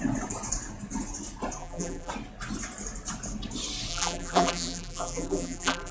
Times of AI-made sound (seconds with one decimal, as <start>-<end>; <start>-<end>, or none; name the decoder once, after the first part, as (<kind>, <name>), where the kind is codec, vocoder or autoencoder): 1.6-2.1 (vocoder, BigVGAN v2); 3.9-5.9